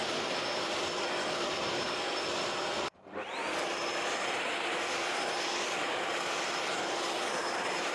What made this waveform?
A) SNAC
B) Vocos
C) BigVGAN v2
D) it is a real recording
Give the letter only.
C